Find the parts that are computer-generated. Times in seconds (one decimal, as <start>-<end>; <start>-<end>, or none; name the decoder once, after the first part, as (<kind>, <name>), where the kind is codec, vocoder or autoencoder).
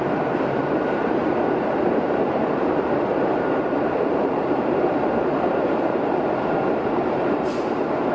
0.0-8.1 (vocoder, BigVGAN v2)